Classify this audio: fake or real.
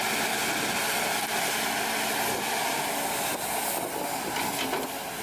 real